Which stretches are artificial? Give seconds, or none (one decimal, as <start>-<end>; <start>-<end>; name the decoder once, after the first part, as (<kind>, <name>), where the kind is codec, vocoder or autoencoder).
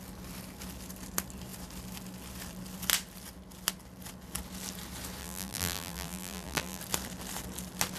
5.2-6.8 (vocoder, BigVGAN v2)